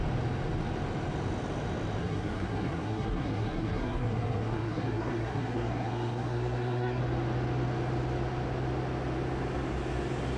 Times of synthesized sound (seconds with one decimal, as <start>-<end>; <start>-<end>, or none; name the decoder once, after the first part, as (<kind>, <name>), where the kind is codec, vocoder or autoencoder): 2.0-7.0 (codec, SNAC)